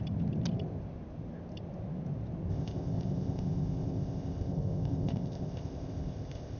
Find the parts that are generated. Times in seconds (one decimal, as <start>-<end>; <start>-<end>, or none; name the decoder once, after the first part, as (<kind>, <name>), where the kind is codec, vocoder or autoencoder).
2.5-6.6 (codec, ZipCodec)